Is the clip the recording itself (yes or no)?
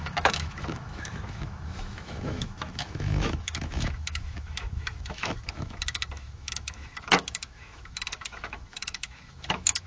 no